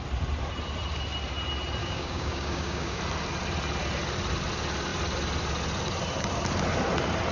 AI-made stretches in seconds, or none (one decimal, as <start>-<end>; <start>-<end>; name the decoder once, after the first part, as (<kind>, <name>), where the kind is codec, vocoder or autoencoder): 1.8-3.0 (codec, DAC)